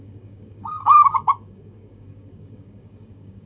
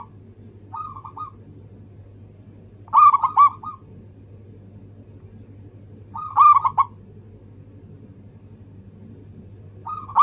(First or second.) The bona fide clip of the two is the second